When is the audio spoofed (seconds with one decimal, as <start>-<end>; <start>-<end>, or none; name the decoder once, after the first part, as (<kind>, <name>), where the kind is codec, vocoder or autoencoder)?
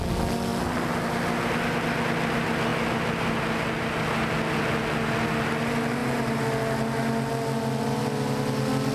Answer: none